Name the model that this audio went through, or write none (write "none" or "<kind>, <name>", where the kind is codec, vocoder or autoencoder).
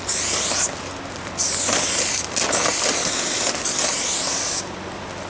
none